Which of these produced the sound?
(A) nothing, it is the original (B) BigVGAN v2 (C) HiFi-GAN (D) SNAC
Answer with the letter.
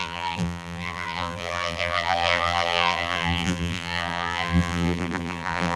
B